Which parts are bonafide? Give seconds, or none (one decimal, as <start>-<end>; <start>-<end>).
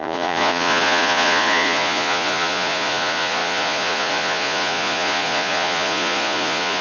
none